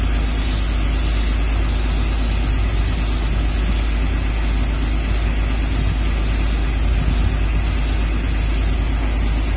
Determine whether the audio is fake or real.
real